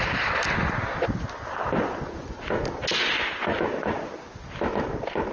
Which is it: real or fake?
real